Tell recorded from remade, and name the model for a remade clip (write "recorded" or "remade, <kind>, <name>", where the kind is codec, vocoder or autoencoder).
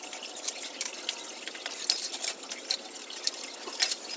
recorded